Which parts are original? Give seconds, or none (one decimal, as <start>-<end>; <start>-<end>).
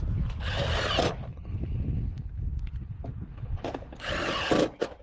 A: 0.0-1.3; 4.0-5.0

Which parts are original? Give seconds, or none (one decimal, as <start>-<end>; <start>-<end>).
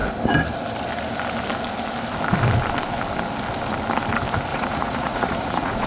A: 0.0-4.5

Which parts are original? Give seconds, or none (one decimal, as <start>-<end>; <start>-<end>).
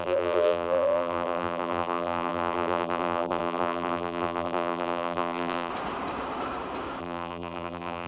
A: 5.7-7.0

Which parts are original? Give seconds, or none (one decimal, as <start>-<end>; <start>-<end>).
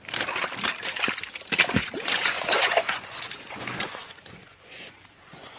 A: 0.0-1.8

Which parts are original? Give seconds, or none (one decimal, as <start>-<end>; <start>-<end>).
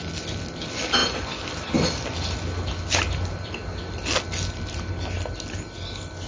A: 0.0-6.3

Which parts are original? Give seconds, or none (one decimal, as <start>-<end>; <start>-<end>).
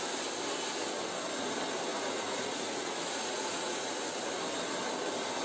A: 0.0-1.9; 3.9-5.4